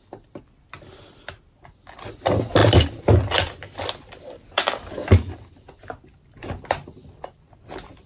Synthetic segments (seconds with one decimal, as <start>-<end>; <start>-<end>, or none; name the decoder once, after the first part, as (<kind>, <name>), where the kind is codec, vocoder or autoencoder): none